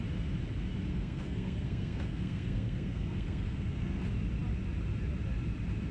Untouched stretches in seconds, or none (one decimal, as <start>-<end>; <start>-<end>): 0.0-0.9; 4.0-5.9